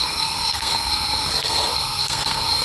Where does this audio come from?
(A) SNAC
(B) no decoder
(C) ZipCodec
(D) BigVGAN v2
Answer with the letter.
A